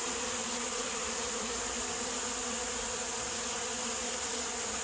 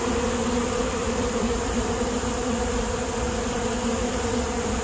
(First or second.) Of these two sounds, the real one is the first